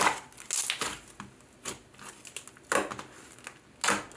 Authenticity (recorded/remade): recorded